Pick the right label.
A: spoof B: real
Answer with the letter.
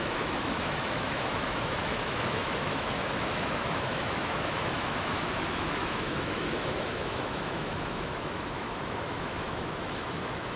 A